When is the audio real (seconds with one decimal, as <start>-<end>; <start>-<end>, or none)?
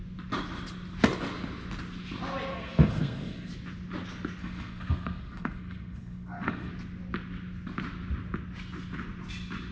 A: 0.0-2.5; 3.5-4.4; 6.7-9.7